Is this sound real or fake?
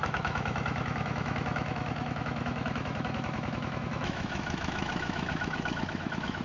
fake